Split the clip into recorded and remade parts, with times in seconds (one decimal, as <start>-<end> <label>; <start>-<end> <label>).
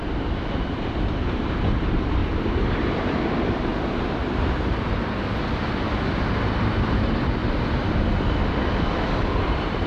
0.0-2.2 remade; 2.2-2.7 recorded; 2.7-3.7 remade; 3.7-6.9 recorded; 6.9-7.4 remade; 7.4-9.4 recorded; 9.4-9.9 remade